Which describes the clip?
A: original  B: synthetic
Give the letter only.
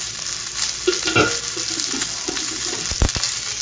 A